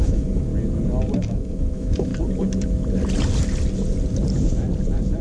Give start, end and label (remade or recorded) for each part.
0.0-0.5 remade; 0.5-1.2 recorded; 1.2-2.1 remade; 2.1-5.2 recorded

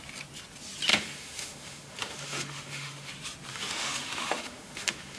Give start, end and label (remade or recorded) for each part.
0.0-0.9 recorded; 0.9-3.1 remade; 3.1-3.5 recorded; 3.5-5.2 remade

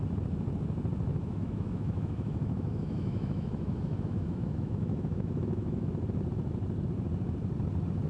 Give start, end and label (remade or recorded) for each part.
0.0-1.1 recorded; 1.1-5.9 remade; 5.9-8.1 recorded